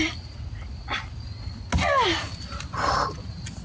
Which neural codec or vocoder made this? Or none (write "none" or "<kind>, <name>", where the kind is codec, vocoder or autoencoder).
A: none